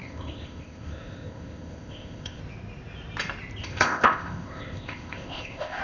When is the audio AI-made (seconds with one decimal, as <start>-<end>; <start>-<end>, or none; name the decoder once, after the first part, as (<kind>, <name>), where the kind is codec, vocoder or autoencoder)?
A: 0.0-2.4 (codec, ZipCodec); 3.6-5.8